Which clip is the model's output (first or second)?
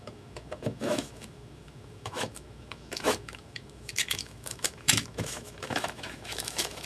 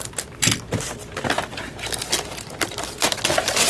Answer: first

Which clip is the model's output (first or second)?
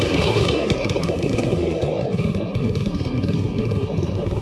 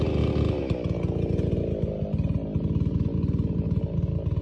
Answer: first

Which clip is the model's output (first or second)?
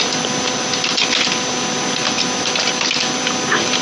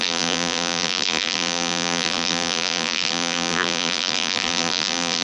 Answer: second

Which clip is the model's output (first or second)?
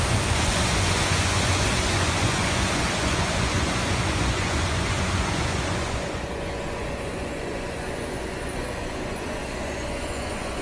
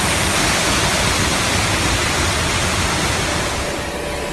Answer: first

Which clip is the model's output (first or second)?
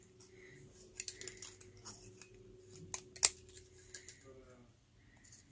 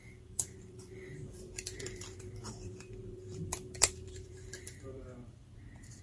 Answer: second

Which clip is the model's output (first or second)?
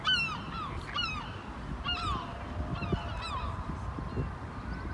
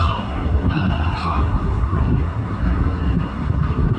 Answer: second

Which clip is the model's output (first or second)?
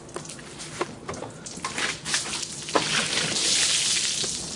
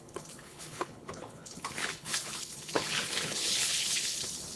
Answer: second